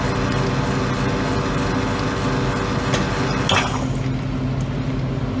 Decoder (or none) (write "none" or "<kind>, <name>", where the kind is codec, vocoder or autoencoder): none